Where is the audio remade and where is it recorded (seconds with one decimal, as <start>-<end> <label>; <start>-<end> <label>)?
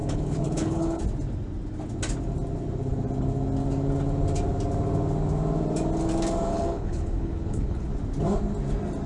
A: 0.0-1.0 remade; 1.0-6.5 recorded; 6.5-7.9 remade; 7.9-9.1 recorded